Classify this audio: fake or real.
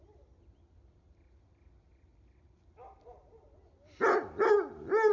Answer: real